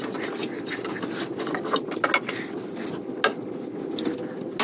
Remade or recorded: recorded